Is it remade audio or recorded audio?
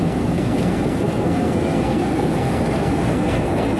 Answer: remade